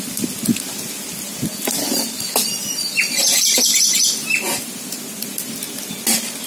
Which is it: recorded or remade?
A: recorded